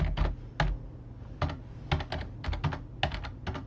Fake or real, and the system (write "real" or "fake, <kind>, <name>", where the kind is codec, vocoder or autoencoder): real